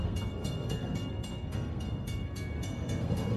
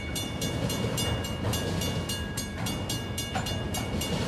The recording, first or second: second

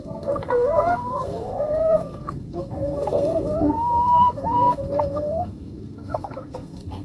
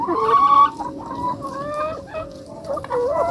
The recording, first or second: second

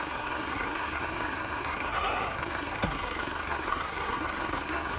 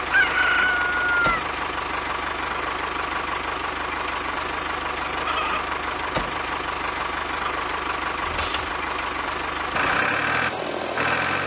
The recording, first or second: second